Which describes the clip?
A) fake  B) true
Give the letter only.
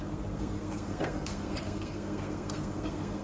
A